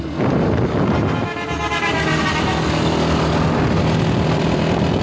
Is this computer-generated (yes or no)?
no